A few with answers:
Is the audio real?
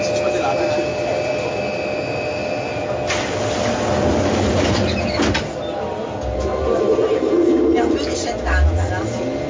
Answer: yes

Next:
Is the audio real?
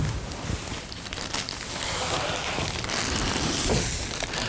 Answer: yes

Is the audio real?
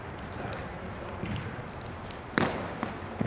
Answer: yes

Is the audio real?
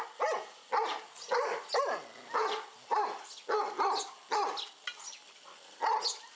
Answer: yes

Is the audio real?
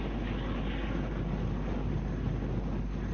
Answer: yes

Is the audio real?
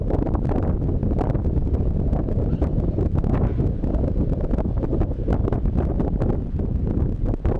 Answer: yes